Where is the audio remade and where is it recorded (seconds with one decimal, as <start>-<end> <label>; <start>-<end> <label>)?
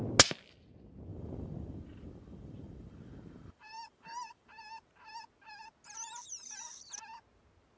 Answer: 0.0-1.1 recorded; 1.1-4.5 remade; 4.5-6.2 recorded; 6.2-6.8 remade; 6.8-7.8 recorded